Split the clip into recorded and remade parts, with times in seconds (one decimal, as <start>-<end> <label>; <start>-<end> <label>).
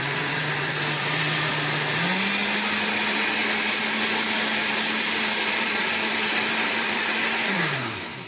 0.0-1.5 remade; 1.5-5.5 recorded; 5.5-8.3 remade